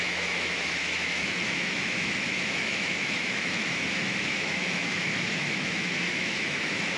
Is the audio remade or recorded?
remade